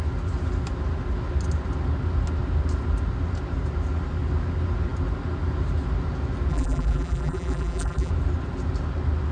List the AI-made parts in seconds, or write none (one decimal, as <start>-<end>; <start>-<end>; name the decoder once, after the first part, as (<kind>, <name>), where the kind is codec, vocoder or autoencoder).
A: 6.5-8.1 (vocoder, BigVGAN v2)